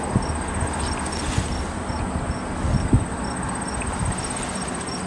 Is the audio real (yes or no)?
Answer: yes